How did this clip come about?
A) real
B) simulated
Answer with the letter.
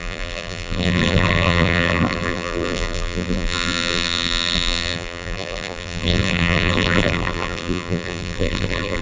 B